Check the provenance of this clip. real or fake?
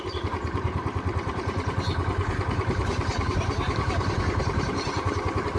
fake